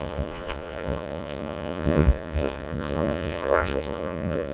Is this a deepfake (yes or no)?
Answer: yes